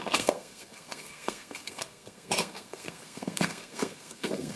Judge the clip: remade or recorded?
remade